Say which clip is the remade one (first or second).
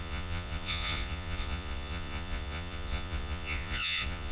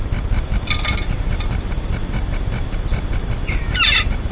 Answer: first